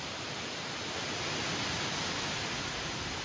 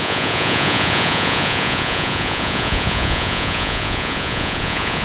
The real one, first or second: first